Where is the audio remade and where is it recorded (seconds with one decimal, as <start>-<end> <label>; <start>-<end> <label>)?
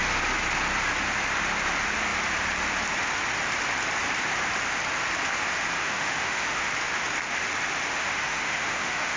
0.0-5.8 recorded; 5.8-6.7 remade; 6.7-7.9 recorded; 7.9-9.2 remade